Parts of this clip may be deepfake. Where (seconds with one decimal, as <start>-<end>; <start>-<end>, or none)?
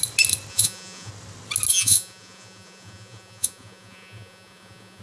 0.5-1.1; 1.7-5.0